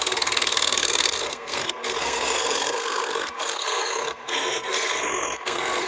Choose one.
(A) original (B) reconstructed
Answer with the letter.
B